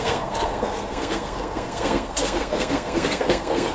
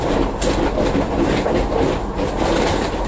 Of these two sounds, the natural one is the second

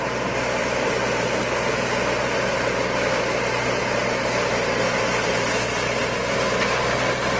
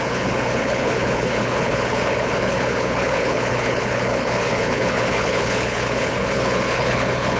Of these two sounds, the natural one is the first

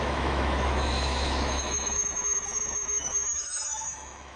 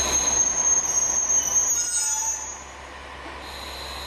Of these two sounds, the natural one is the second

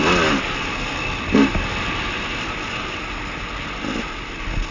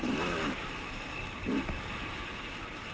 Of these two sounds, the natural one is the first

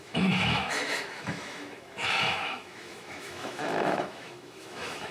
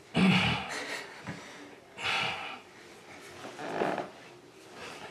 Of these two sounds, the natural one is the second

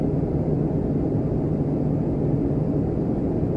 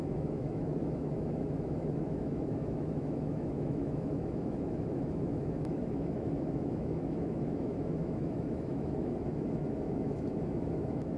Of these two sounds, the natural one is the first